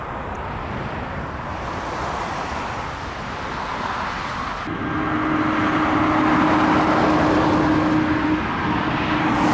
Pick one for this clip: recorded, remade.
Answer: recorded